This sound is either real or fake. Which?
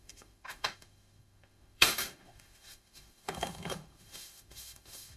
fake